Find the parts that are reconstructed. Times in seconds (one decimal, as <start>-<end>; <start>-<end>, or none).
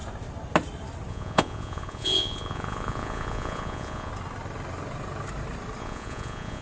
1.1-4.1; 5.8-6.6